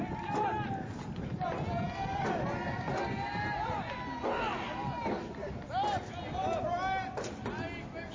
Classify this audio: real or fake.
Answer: real